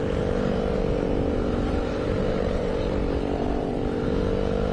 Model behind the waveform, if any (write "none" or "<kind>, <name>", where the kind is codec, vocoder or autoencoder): vocoder, BigVGAN v2